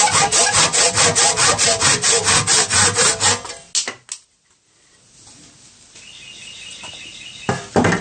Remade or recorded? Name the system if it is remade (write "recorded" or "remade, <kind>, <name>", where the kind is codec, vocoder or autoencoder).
recorded